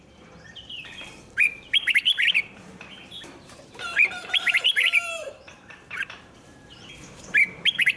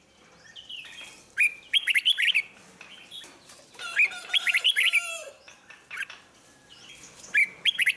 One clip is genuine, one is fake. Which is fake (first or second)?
first